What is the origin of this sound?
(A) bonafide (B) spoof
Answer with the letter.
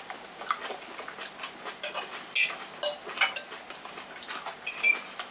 A